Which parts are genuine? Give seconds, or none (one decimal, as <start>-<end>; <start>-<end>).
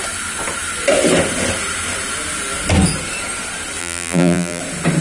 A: 0.0-3.8; 4.6-5.0